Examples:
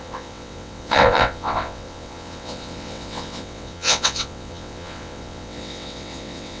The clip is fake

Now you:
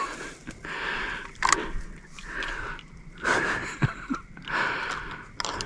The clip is real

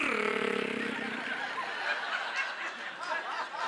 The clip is real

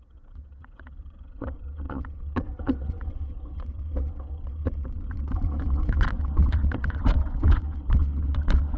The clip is fake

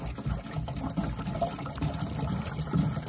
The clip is real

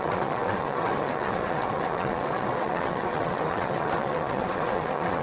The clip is fake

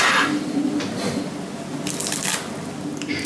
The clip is real